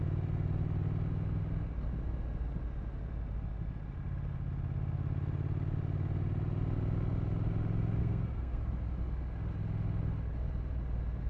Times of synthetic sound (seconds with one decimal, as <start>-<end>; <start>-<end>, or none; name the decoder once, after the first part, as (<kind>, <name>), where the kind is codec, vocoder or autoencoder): 8.0-8.6 (codec, SNAC)